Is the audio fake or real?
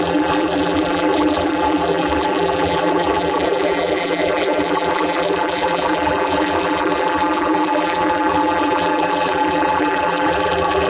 fake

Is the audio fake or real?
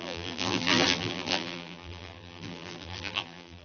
fake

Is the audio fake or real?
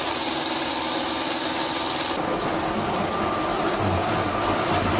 real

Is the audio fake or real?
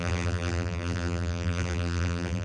fake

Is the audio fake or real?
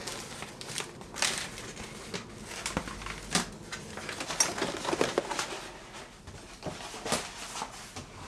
real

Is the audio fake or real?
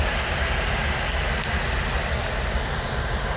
real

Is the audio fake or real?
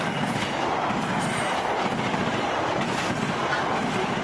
real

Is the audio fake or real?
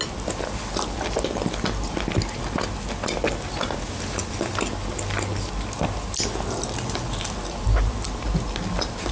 real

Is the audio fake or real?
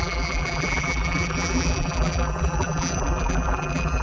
fake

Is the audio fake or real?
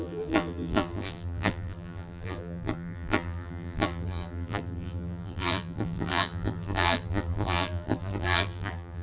fake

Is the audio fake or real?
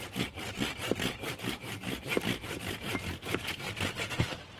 real